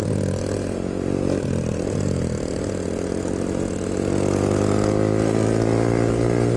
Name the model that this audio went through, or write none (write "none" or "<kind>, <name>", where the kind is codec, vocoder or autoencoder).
none